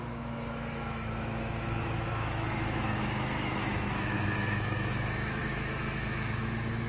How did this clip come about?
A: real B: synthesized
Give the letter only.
B